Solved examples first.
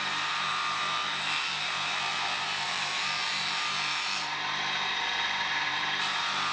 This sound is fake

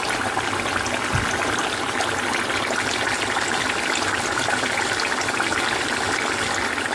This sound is real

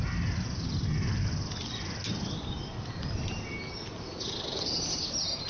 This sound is real